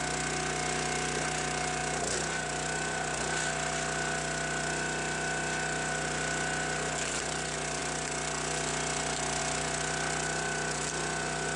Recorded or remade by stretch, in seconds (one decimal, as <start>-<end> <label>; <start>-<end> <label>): 0.0-11.6 recorded